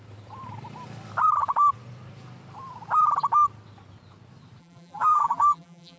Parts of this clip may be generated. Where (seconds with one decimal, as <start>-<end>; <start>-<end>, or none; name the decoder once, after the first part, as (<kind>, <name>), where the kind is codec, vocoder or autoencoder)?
4.6-6.0 (vocoder, BigVGAN v2)